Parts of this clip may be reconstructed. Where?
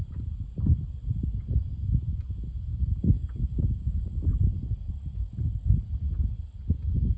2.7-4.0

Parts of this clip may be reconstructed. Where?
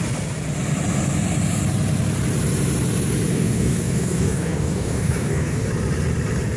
3.3-5.7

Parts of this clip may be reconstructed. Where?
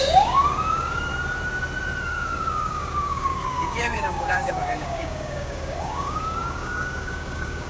0.0-1.1; 2.0-7.7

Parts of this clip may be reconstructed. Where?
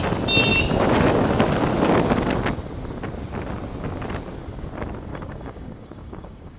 5.1-6.6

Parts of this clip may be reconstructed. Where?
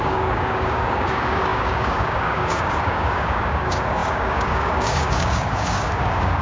0.0-6.4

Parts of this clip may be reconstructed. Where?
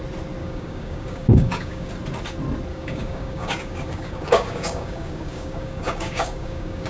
0.4-1.9; 2.7-6.9